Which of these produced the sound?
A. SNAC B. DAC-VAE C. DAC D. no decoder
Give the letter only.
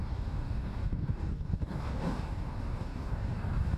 C